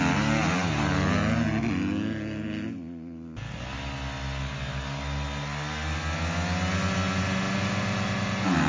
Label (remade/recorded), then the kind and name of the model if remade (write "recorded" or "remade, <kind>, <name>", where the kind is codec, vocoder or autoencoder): recorded